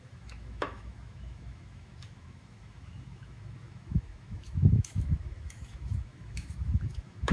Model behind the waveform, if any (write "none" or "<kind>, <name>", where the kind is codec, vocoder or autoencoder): autoencoder, DAC-VAE